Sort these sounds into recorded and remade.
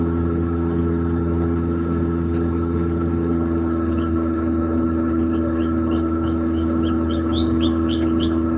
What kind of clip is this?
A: remade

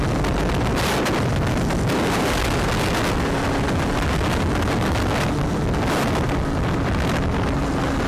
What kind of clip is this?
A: recorded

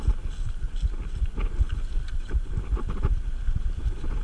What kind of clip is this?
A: recorded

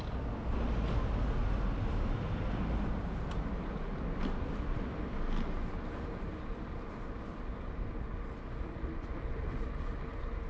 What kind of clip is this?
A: recorded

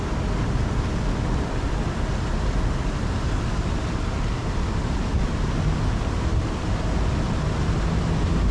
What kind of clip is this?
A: recorded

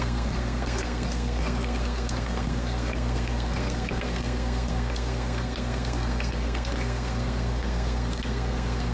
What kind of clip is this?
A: remade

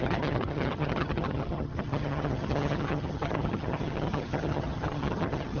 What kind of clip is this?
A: remade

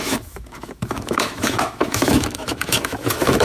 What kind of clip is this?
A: remade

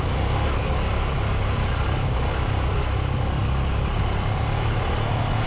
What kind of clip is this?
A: recorded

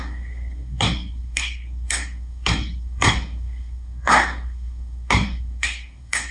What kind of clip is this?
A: remade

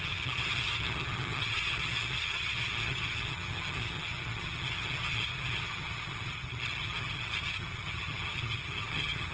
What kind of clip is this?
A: remade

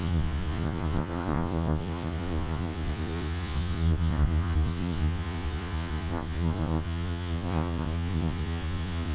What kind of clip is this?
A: remade